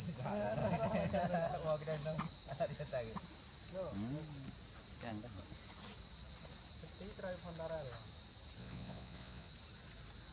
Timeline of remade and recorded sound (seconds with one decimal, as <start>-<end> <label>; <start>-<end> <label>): 0.0-8.6 recorded; 8.6-9.5 remade; 9.5-10.3 recorded